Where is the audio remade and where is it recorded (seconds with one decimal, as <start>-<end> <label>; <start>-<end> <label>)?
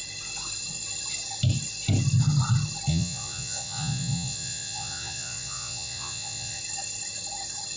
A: 0.0-2.9 recorded; 2.9-6.6 remade; 6.6-7.8 recorded